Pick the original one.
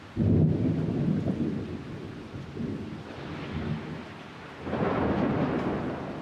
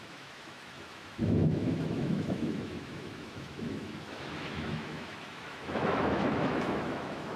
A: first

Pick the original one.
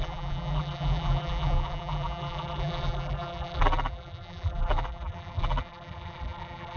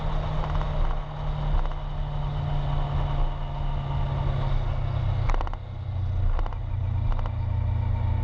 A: second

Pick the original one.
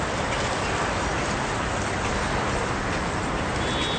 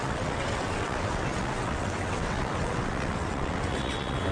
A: first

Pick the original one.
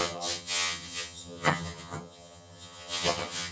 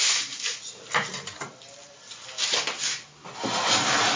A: second